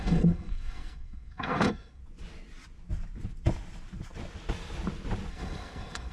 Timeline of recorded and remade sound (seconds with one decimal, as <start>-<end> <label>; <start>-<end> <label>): 0.0-2.0 remade; 2.0-5.3 recorded; 5.3-6.1 remade